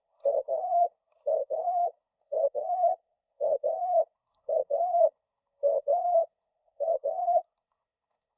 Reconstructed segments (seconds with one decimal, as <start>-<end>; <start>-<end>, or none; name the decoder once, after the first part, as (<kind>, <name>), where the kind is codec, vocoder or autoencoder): 0.0-8.4 (codec, SNAC)